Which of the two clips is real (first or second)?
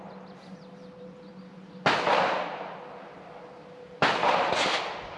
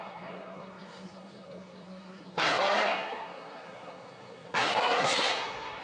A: first